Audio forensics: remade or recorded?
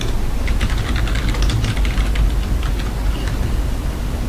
recorded